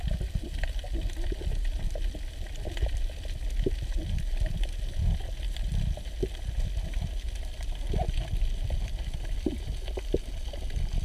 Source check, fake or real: real